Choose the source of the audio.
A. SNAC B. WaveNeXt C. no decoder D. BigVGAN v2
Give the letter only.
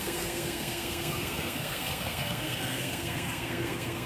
A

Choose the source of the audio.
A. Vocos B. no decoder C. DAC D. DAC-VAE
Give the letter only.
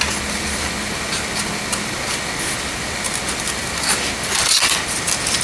B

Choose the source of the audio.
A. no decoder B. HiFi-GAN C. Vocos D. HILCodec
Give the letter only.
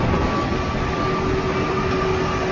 A